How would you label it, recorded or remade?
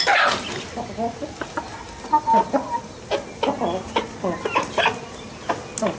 recorded